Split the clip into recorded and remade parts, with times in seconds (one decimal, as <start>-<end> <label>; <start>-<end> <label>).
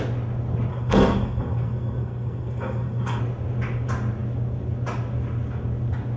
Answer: 0.0-0.7 recorded; 0.7-3.2 remade; 3.2-6.2 recorded